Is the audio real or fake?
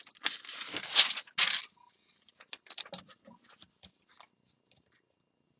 real